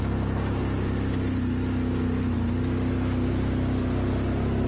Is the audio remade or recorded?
recorded